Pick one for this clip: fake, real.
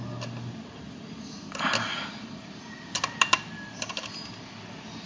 real